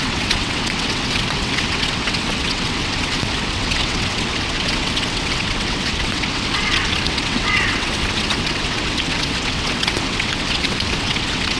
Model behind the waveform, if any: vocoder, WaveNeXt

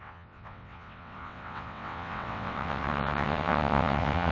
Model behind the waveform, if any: vocoder, WaveNeXt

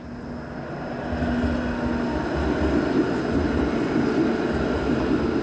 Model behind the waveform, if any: none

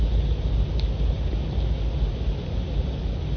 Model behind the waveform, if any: none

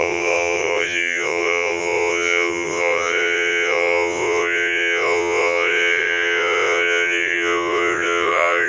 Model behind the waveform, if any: vocoder, WaveNeXt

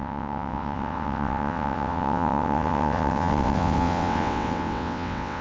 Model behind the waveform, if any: vocoder, WaveNeXt